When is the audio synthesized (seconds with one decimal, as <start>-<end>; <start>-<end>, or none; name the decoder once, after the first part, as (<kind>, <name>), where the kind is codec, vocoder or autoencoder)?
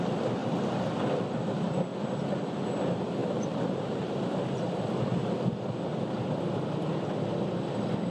3.2-4.3 (vocoder, BigVGAN v2)